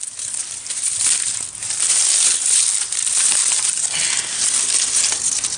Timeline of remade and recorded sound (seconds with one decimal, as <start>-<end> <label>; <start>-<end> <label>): 0.0-5.6 recorded